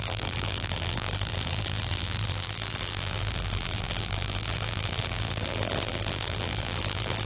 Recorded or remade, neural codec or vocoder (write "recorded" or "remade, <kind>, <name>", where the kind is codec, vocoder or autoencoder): remade, vocoder, BigVGAN v2